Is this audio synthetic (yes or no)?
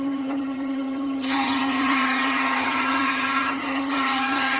yes